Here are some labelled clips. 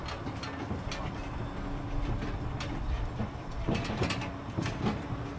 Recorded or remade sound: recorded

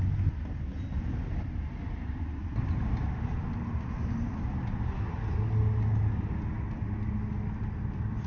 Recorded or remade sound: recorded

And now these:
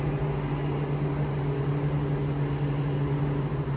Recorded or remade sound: recorded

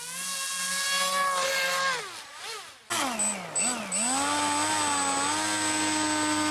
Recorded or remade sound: recorded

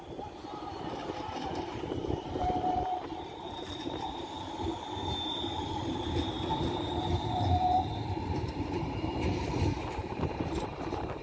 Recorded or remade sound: remade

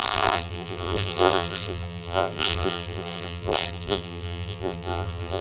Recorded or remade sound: remade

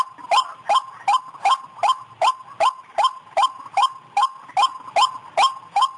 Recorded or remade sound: recorded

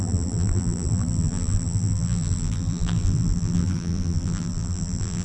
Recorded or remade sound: remade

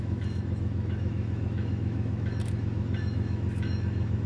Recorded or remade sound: remade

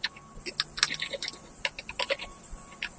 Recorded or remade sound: recorded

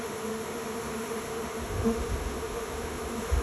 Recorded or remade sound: remade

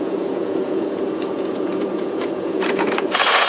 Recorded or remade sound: remade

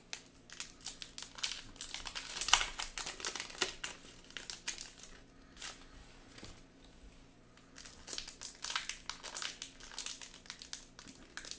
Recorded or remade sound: recorded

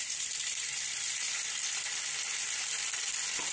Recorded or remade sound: recorded